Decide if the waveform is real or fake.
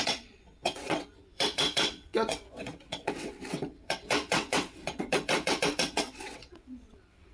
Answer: fake